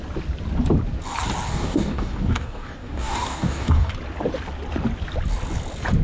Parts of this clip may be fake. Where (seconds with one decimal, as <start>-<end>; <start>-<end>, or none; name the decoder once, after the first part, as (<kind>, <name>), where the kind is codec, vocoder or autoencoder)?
1.5-3.9 (codec, DAC)